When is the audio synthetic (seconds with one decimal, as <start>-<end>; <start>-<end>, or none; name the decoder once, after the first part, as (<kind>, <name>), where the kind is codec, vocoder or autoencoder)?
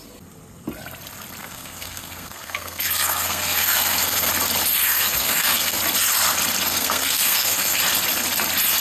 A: 1.4-4.3 (codec, SNAC); 4.8-5.8; 6.7-7.8